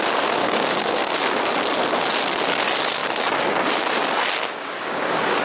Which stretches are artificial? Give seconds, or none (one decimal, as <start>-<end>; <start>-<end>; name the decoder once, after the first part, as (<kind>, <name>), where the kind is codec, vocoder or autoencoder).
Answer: 0.4-1.2 (codec, DAC); 4.6-5.4